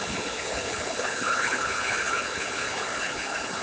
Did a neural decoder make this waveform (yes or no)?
yes